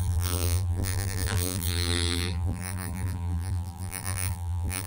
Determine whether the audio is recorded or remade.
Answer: remade